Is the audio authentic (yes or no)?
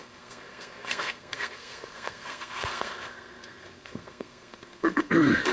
no